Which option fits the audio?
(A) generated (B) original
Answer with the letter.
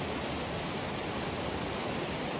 B